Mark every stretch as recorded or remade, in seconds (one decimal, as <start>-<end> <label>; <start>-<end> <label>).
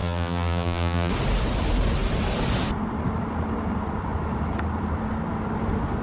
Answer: 0.0-1.1 remade; 1.1-6.0 recorded